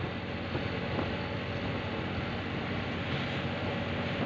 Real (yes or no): yes